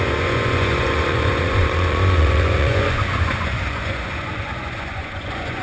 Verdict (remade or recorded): remade